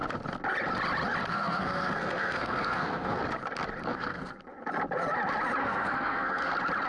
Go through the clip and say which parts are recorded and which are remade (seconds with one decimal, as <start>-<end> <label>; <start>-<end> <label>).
0.0-1.3 recorded; 1.3-3.2 remade; 3.2-3.9 recorded; 3.9-4.4 remade; 4.4-5.6 recorded; 5.6-6.5 remade; 6.5-6.9 recorded